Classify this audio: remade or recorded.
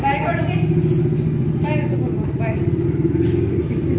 recorded